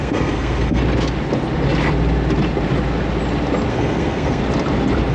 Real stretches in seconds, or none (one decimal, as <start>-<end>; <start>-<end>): 0.8-3.7; 4.4-5.1